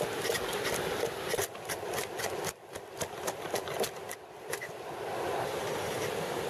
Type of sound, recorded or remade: recorded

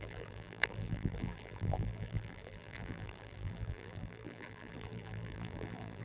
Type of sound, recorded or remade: remade